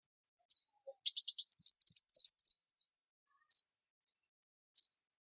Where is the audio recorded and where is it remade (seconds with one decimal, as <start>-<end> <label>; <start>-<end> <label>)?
0.0-1.7 recorded; 1.7-3.1 remade; 3.1-5.2 recorded